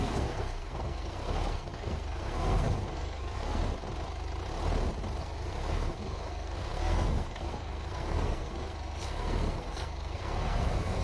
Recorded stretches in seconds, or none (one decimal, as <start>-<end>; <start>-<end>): 3.6-5.2